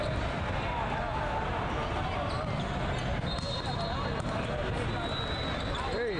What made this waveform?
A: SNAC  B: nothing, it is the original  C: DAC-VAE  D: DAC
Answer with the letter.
B